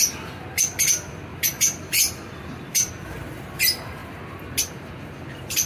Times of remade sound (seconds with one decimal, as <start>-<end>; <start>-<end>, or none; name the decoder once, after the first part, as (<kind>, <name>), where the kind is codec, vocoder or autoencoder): 1.3-2.9 (vocoder, BigVGAN v2)